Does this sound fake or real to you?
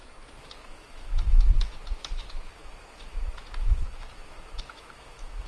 fake